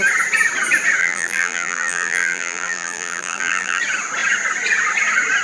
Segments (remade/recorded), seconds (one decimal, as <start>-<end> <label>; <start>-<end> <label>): 0.0-1.0 recorded; 1.0-3.8 remade; 3.8-5.4 recorded